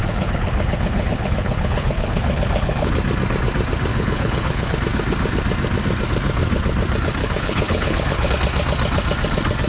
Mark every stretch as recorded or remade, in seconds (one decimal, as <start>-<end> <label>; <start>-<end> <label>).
0.0-2.9 remade; 2.9-3.9 recorded; 3.9-4.7 remade; 4.7-7.2 recorded; 7.2-8.3 remade; 8.3-9.7 recorded